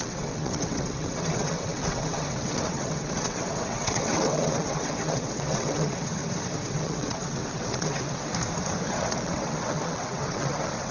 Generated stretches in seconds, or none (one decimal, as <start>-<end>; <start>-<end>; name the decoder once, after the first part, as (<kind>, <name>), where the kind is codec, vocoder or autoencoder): 0.0-6.2 (vocoder, WaveNeXt); 6.7-8.3; 8.9-10.9